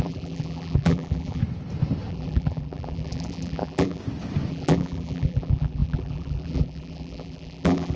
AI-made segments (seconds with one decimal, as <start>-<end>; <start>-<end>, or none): 0.0-1.4; 2.1-4.0; 4.5-8.0